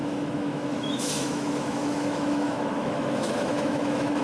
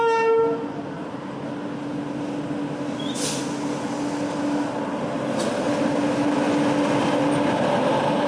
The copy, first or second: first